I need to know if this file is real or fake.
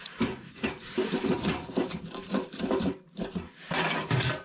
fake